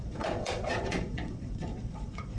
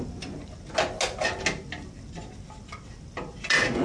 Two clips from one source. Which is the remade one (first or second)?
first